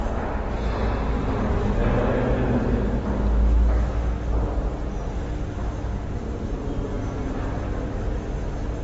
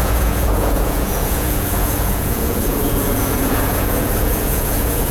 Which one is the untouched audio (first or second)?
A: first